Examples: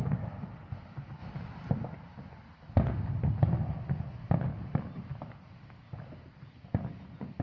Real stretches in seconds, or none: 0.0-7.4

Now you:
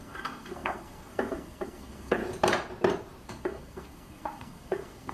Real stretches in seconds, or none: 2.2-3.3